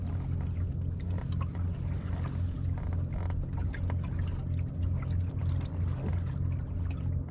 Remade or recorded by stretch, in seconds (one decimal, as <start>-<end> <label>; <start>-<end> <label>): 0.0-7.3 recorded